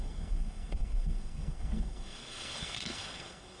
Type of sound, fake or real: fake